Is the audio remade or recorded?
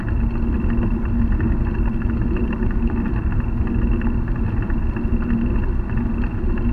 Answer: recorded